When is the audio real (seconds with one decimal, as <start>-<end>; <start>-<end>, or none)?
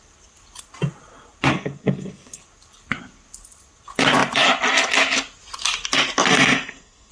0.0-1.5; 2.4-6.3